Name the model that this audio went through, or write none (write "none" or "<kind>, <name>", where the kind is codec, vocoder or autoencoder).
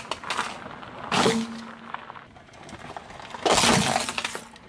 none